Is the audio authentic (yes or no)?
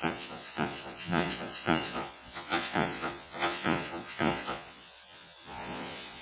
no